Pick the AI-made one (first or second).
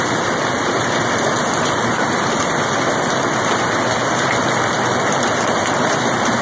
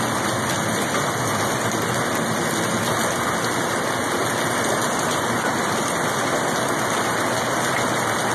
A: first